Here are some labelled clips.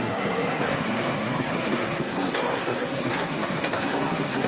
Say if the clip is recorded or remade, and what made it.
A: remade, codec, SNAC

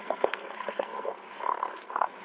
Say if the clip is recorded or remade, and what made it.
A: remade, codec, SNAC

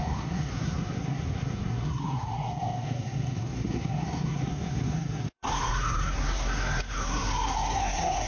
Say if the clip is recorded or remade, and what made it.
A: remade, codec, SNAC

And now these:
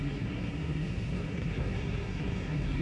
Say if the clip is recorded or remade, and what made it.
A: remade, codec, SNAC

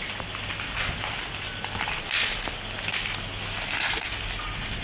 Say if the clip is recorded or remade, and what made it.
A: recorded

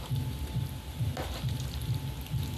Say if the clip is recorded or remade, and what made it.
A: recorded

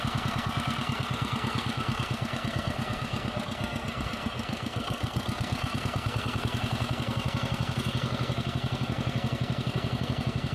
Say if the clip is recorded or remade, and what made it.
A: remade, codec, SNAC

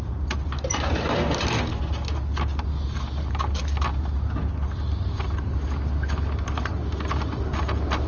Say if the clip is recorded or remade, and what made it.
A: recorded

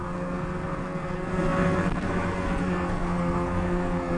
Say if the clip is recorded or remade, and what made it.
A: remade, codec, SNAC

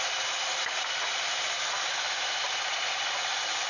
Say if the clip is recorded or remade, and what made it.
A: recorded